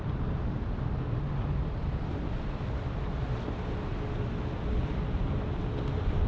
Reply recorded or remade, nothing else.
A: recorded